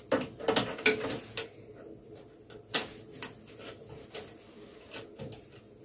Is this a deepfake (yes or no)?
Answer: no